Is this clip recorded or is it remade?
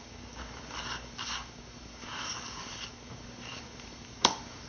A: remade